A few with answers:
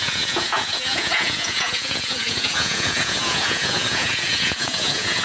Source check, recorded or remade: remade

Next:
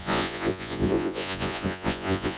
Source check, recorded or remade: remade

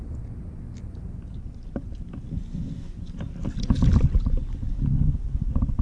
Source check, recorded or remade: recorded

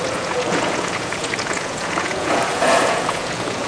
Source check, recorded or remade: remade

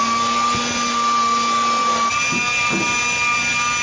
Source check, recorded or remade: recorded